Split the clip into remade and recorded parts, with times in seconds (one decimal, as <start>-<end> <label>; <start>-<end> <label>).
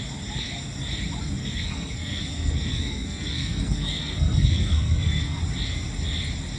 0.0-1.4 recorded; 1.4-5.4 remade; 5.4-6.6 recorded